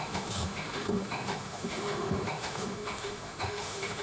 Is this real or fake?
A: fake